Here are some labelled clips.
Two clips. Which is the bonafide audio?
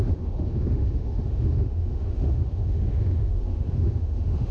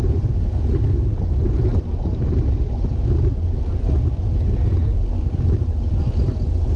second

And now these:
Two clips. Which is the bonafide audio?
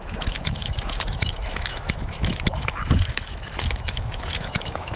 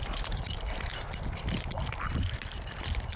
second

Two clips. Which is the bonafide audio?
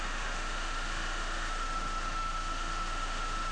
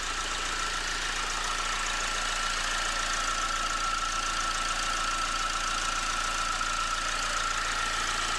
second